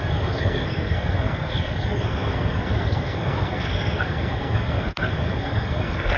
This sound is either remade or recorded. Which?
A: remade